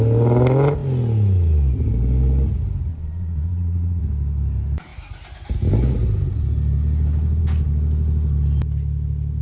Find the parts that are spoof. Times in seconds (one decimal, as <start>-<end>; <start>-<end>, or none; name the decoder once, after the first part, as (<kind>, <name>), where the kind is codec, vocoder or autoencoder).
2.9-4.0 (vocoder, Vocos)